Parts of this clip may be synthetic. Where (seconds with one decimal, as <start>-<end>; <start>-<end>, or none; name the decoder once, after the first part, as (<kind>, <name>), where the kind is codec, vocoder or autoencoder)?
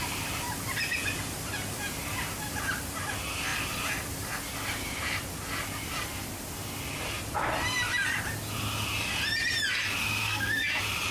10.0-10.7 (codec, SNAC)